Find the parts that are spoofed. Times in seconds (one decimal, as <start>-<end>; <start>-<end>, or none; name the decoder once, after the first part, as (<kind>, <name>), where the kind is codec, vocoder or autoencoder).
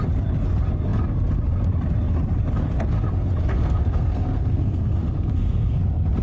3.5-5.8 (codec, SNAC)